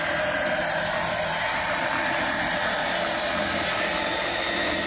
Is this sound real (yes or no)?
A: yes